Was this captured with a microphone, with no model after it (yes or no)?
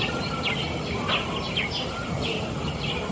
yes